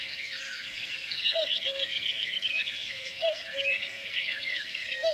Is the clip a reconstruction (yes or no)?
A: yes